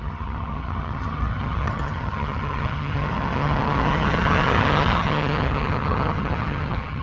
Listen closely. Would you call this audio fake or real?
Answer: fake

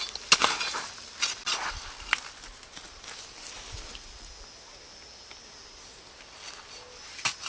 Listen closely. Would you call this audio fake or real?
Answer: real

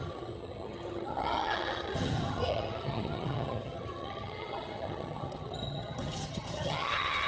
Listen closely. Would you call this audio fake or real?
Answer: fake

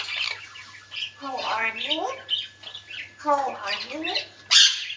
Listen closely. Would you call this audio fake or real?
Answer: real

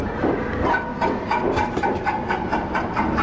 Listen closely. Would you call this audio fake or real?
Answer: real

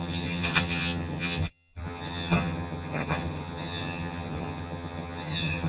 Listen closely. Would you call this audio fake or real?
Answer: fake